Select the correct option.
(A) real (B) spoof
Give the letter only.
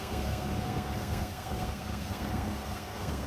B